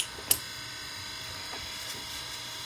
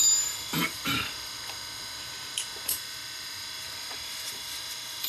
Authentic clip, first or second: first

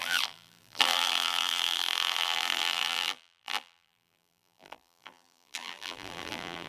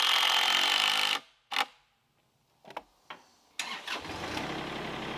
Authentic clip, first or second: second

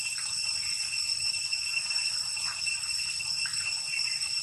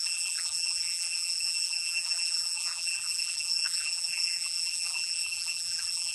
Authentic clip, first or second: first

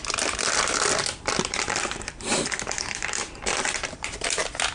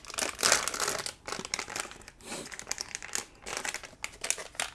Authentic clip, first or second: second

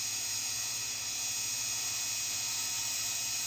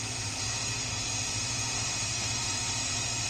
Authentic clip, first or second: first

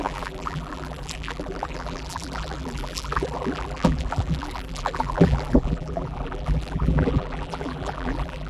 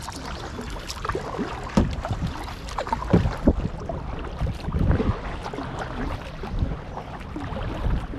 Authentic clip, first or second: second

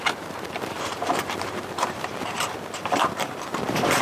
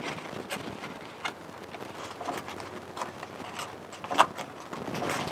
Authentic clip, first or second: second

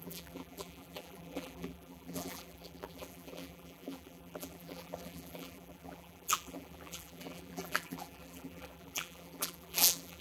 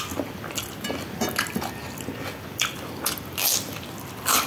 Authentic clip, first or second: second